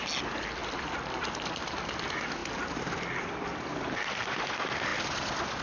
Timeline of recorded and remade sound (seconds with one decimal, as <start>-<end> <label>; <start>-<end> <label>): 0.0-5.6 recorded